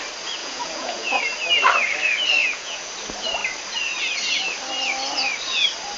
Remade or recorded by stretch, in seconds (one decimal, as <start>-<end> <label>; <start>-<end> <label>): 0.0-0.4 recorded; 0.4-1.2 remade; 1.2-2.4 recorded; 2.4-2.9 remade; 2.9-6.0 recorded